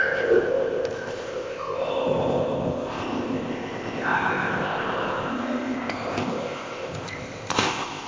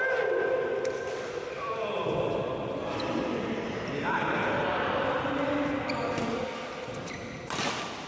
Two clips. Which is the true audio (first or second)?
second